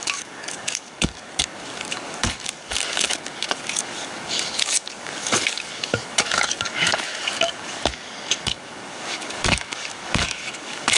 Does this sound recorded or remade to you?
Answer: remade